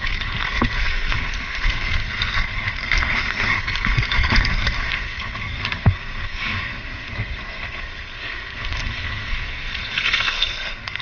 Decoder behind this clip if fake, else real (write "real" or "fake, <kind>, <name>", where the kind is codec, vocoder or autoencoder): fake, codec, SNAC